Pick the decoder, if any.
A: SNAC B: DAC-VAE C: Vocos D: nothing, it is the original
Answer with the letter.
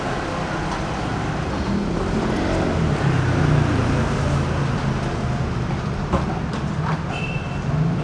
D